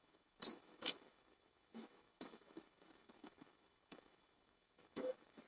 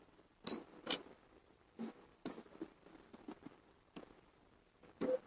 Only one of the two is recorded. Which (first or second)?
second